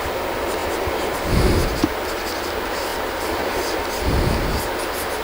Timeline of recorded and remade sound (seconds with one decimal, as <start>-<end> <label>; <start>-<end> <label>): 0.0-5.2 recorded